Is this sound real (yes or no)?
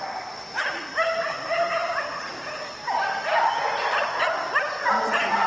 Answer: yes